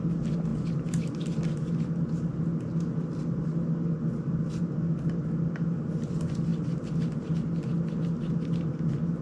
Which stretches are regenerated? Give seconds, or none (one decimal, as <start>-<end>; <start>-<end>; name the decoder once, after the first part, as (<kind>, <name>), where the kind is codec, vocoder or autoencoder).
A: none